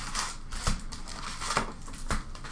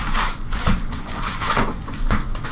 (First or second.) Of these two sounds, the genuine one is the first